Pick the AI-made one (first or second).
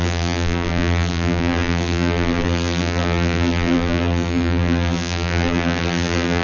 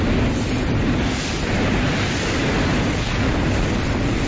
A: first